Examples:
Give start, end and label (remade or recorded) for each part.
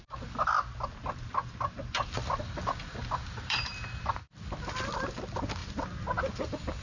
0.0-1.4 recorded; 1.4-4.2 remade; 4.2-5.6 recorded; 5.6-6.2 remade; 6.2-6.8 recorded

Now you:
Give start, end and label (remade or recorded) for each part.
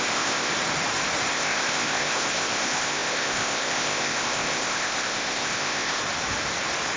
0.0-0.5 remade; 0.5-1.3 recorded; 1.3-6.0 remade; 6.0-7.0 recorded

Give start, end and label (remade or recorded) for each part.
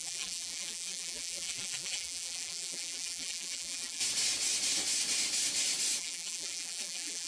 0.0-4.0 remade; 4.0-6.0 recorded; 6.0-7.3 remade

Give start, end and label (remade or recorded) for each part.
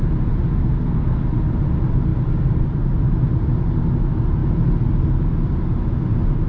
0.0-0.6 recorded; 0.6-1.2 remade; 1.2-6.5 recorded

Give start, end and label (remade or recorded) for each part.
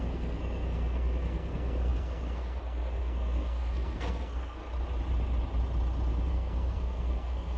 0.0-4.6 remade; 4.6-6.3 recorded; 6.3-7.6 remade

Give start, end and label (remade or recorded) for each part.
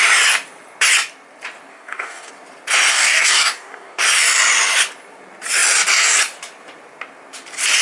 0.0-1.7 recorded; 1.7-2.3 remade; 2.3-2.9 recorded; 2.9-4.0 remade; 4.0-7.8 recorded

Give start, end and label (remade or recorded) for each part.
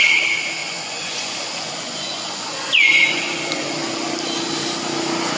0.0-0.6 recorded; 0.6-3.7 remade; 3.7-5.4 recorded